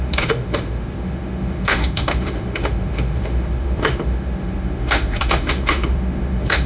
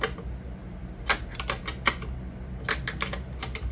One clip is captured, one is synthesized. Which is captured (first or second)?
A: second